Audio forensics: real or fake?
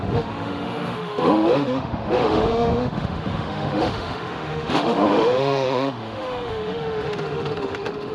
fake